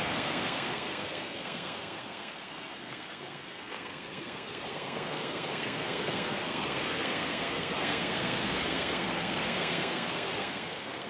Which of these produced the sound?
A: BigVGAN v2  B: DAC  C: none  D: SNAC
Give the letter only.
D